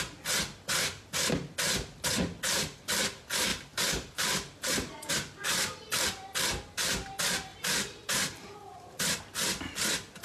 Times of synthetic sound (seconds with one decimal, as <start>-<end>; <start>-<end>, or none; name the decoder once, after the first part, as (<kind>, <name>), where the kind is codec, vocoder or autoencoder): 3.5-5.1 (vocoder, BigVGAN v2); 7.5-9.2